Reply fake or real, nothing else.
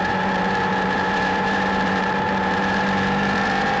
fake